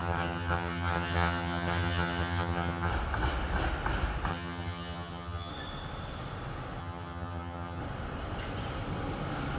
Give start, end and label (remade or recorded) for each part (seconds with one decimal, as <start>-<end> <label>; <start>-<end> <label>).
0.0-2.9 remade; 2.9-4.3 recorded; 4.3-5.5 remade; 5.5-6.8 recorded; 6.8-7.8 remade; 7.8-9.6 recorded